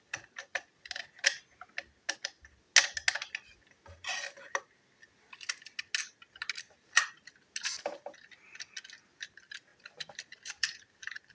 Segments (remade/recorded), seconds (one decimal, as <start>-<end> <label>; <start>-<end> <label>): 0.0-9.7 recorded; 9.7-11.3 remade